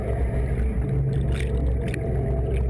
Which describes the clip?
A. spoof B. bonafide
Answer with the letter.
B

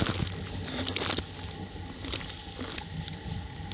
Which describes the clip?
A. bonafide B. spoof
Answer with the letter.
A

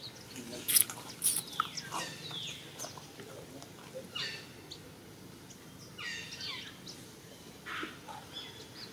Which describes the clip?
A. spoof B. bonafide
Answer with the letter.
B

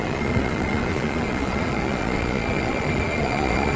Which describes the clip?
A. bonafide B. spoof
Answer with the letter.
B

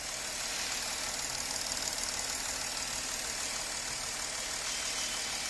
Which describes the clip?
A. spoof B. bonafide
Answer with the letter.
B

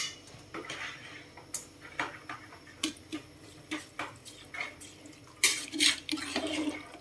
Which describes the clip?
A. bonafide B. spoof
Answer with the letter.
A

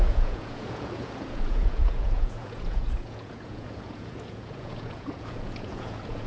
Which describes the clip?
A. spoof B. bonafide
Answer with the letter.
A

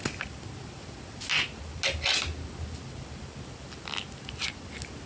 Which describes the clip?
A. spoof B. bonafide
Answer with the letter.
B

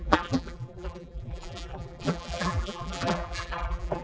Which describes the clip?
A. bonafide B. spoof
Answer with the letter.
B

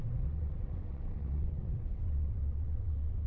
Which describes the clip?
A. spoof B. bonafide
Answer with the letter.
A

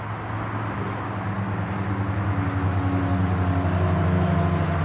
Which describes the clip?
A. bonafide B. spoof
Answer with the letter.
A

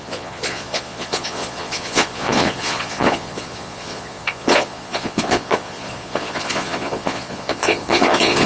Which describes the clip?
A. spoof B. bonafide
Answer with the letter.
A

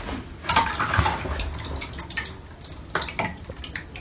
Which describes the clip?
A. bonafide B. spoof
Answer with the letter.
A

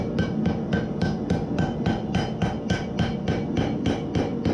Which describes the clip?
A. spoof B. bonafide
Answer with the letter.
B